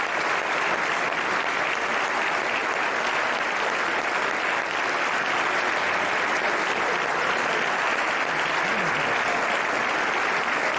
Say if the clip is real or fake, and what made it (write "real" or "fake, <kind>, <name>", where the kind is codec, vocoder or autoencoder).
real